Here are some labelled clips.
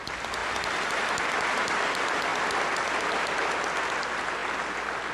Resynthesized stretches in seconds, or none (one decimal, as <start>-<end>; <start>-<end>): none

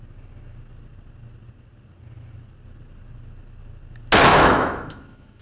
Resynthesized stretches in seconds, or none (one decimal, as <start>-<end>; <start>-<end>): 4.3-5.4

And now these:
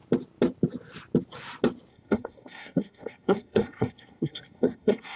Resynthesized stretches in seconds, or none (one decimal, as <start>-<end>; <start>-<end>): 1.9-5.2

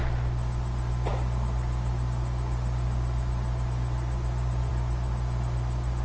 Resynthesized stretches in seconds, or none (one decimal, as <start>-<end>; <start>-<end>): none